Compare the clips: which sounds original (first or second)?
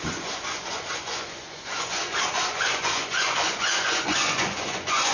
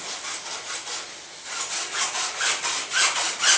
second